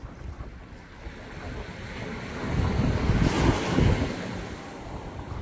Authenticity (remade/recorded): recorded